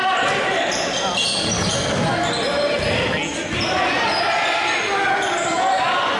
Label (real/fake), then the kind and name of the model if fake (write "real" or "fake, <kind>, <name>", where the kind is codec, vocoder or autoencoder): real